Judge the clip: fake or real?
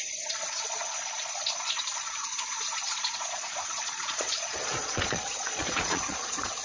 fake